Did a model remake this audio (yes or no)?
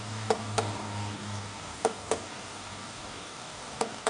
yes